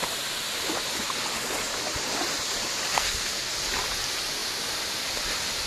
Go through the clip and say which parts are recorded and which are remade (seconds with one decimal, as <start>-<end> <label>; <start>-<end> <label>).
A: 0.0-2.9 recorded; 2.9-3.5 remade; 3.5-5.7 recorded